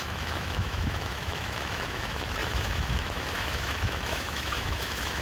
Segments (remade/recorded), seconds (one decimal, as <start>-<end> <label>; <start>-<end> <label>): 0.0-5.2 remade